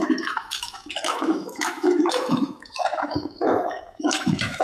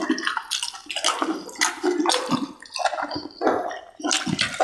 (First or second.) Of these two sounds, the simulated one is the first